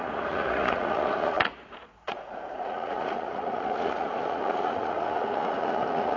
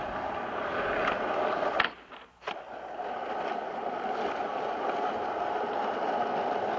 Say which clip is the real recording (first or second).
second